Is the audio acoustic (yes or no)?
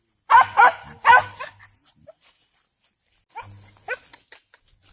yes